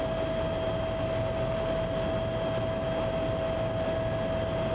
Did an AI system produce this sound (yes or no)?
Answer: no